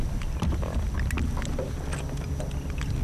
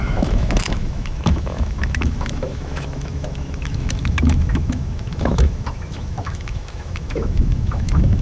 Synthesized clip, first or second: second